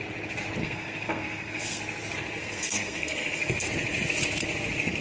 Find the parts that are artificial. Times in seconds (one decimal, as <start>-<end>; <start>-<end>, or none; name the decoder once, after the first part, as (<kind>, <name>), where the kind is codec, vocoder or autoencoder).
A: 0.6-1.8 (codec, SNAC); 2.4-3.7